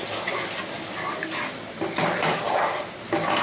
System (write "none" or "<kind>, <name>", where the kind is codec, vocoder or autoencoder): none